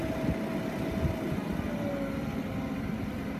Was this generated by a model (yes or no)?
no